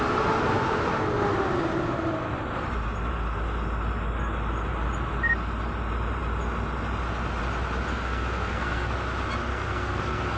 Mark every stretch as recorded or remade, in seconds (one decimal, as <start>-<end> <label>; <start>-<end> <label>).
0.0-7.9 recorded; 7.9-8.9 remade; 8.9-9.5 recorded; 9.5-10.4 remade